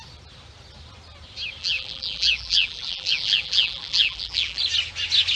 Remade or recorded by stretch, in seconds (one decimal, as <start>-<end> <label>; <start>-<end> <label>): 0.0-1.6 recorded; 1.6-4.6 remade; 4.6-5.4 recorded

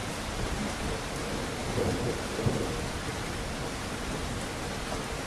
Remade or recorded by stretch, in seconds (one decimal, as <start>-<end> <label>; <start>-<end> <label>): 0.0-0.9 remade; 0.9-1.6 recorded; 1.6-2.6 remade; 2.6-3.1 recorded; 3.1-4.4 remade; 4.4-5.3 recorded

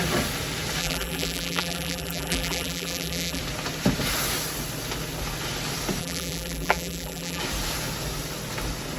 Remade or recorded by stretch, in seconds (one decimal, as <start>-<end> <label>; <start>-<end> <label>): 0.0-0.8 recorded; 0.8-3.4 remade; 3.4-6.0 recorded; 6.0-7.4 remade; 7.4-9.0 recorded